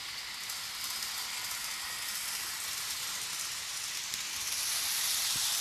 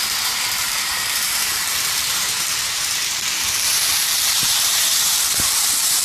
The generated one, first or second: second